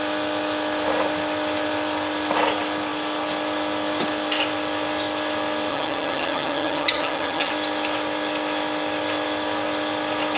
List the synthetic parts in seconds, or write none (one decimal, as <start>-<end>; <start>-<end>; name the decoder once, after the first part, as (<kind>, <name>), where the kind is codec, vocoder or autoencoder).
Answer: 5.7-7.5 (vocoder, HiFi-GAN)